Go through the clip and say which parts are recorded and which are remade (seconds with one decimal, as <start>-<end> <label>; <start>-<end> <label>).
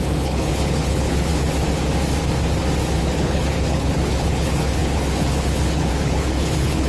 0.0-1.3 remade; 1.3-3.0 recorded; 3.0-6.9 remade